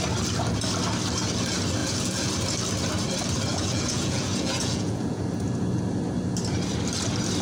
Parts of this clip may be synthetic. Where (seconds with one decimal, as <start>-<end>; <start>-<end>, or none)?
1.8-2.3; 3.5-5.2